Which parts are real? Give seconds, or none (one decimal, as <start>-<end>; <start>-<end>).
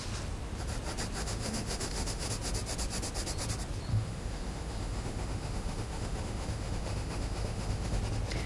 0.0-1.2; 2.3-3.9; 8.0-8.5